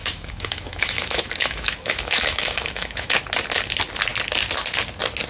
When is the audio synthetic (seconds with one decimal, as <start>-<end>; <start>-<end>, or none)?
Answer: 0.0-3.2